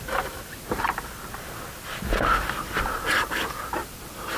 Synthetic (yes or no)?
no